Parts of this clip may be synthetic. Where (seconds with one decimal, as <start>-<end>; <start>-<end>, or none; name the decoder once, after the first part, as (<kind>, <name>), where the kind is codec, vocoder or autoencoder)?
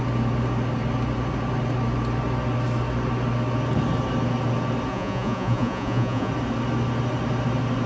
4.9-6.3 (vocoder, Vocos)